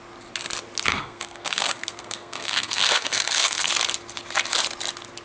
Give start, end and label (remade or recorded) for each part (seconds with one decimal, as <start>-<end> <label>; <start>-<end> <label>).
0.0-0.9 recorded; 0.9-3.7 remade; 3.7-5.2 recorded